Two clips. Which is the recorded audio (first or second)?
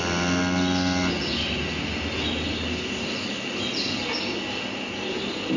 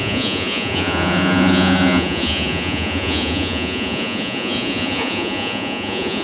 first